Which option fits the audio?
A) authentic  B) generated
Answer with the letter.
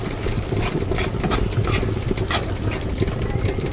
A